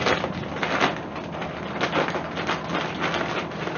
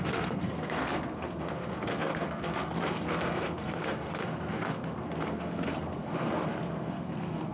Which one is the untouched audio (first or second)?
first